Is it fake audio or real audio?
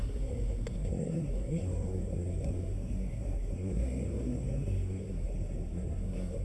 fake